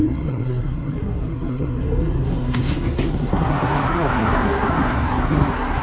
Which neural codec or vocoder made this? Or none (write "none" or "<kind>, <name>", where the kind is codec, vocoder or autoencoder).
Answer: codec, SNAC